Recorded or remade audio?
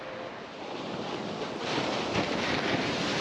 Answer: recorded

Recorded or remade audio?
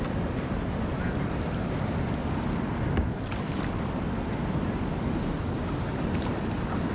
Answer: recorded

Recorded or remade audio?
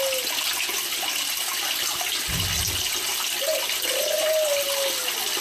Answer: recorded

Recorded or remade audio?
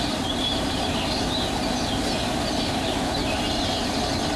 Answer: recorded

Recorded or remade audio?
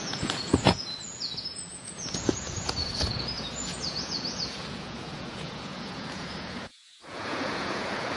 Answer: remade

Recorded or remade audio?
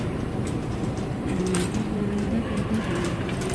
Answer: remade